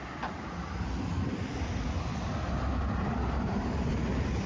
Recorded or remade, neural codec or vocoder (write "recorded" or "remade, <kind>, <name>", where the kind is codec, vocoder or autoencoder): recorded